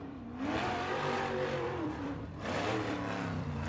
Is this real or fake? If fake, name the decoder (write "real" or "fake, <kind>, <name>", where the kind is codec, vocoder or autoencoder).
fake, vocoder, BigVGAN v2